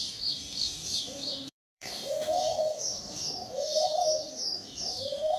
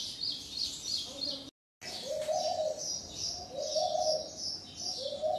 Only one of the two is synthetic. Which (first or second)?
first